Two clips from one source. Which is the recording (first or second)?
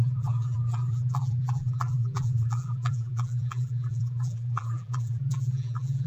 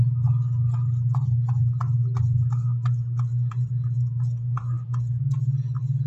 second